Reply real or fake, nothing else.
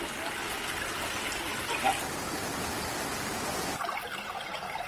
real